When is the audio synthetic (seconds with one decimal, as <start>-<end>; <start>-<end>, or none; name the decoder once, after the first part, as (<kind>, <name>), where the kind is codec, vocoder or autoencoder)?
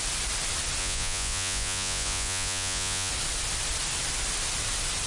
0.8-3.1 (vocoder, Vocos)